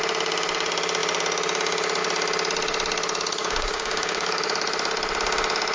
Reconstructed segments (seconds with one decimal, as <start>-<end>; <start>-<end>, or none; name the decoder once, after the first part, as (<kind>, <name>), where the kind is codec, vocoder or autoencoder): 3.4-4.4 (codec, DAC)